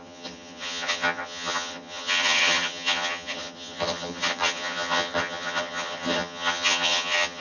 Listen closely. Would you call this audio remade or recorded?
remade